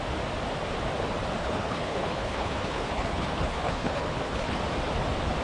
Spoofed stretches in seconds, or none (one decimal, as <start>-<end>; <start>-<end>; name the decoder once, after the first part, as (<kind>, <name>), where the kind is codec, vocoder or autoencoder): 1.4-4.6 (codec, HILCodec)